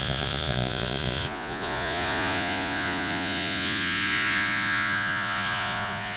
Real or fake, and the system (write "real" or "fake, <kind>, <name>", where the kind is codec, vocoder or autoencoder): fake, vocoder, Vocos